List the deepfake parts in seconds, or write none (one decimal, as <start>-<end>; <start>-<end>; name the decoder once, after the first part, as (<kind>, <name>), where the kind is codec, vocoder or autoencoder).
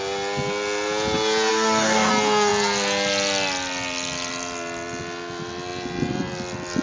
1.5-2.1 (codec, DAC)